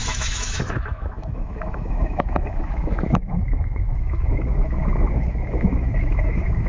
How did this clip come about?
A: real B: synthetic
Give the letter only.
B